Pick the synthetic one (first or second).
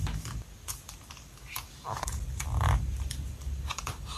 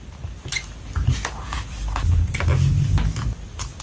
first